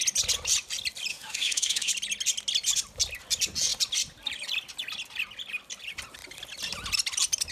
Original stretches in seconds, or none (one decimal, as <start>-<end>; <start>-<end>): 0.0-1.1; 1.9-7.5

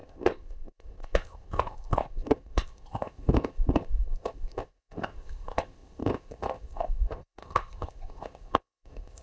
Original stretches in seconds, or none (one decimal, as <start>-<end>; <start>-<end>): none

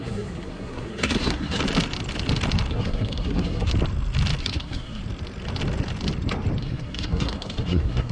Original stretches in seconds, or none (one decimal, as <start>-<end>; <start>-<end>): 1.6-2.7; 3.7-4.4; 5.0-6.6

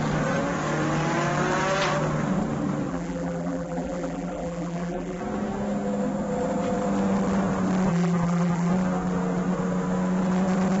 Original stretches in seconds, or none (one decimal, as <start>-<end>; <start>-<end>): 0.0-2.9; 5.2-7.9; 8.7-10.8

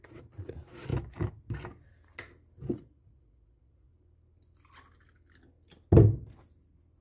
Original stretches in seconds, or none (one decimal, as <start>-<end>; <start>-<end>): 0.9-2.7; 3.9-7.0

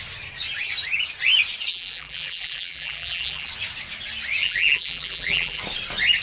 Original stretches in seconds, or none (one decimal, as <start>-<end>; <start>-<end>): 0.0-1.7; 3.5-4.4; 5.6-6.2